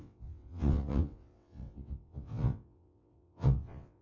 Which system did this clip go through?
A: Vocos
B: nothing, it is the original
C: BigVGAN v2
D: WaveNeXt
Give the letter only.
D